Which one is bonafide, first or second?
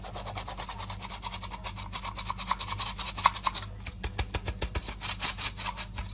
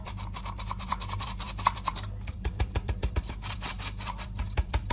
first